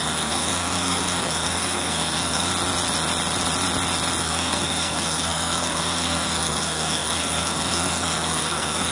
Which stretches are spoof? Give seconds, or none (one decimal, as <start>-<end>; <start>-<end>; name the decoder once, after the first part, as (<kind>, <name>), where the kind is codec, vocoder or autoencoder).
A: 0.0-2.5 (codec, SNAC); 4.2-8.9

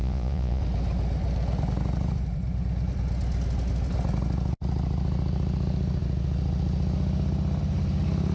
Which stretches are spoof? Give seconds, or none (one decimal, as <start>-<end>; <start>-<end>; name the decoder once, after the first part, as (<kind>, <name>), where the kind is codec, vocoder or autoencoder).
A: 0.0-0.6 (vocoder, Vocos)